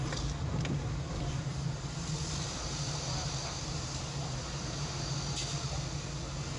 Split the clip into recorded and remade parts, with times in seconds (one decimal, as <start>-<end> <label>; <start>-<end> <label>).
0.0-1.5 recorded; 1.5-5.5 remade; 5.5-6.6 recorded